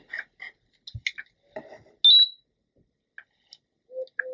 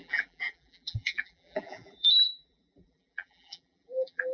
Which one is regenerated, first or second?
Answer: second